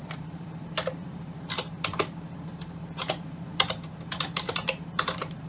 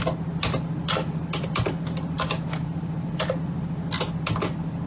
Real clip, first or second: second